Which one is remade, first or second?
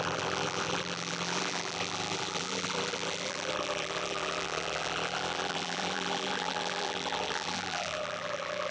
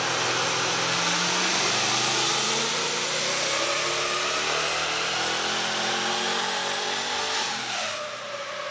first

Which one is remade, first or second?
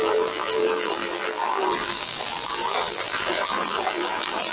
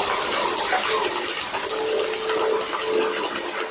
first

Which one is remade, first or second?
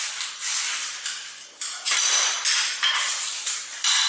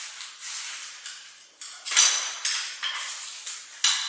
first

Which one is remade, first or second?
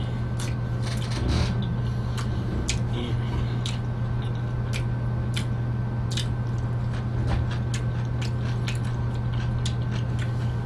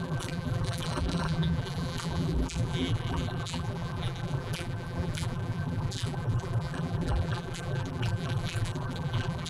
second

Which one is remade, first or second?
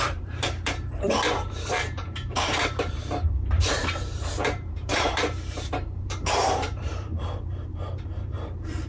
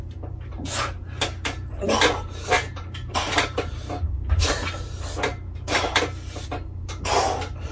first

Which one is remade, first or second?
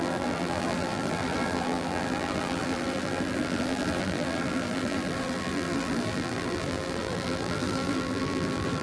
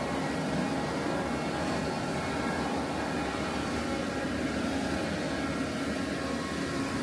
first